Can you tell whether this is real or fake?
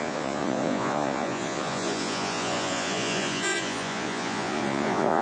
fake